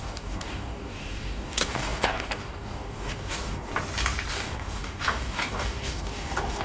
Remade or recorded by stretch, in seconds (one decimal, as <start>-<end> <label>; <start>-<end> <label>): 0.0-3.7 remade; 3.7-4.3 recorded; 4.3-6.6 remade